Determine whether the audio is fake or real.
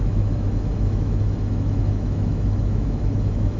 fake